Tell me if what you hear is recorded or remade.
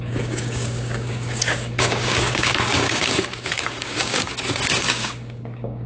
remade